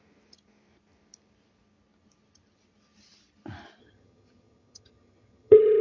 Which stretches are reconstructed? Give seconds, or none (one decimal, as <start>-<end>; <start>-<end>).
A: 3.8-5.8

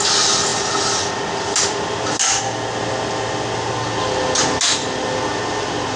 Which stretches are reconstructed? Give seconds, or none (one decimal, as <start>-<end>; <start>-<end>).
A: none

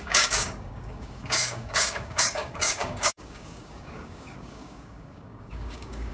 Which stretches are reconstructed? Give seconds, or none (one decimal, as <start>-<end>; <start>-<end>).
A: 0.0-6.1

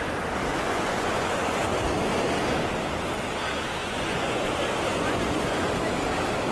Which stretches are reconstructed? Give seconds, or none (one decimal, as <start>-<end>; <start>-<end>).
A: 0.5-1.6; 3.8-4.5; 4.9-5.7

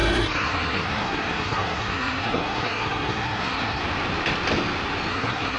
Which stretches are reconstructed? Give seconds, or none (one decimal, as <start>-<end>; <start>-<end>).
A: 0.0-3.8; 5.1-5.6